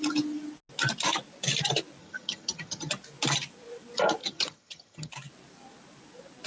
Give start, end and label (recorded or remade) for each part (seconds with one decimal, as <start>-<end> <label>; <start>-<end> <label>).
0.0-2.0 recorded; 2.0-2.9 remade; 2.9-4.2 recorded; 4.2-5.1 remade; 5.1-6.5 recorded